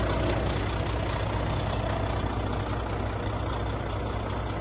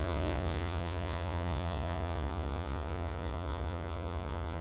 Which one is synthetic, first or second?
second